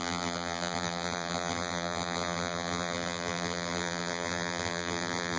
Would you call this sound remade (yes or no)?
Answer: yes